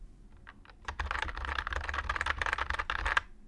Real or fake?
real